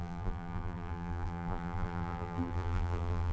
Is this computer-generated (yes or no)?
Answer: yes